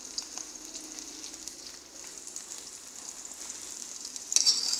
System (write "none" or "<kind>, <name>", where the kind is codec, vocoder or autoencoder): none